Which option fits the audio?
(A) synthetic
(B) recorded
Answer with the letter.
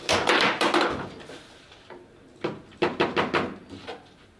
B